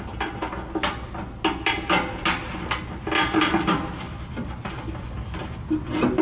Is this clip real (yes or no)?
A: yes